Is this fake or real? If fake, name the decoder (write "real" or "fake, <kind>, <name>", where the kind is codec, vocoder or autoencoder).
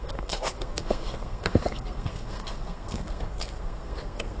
fake, codec, SNAC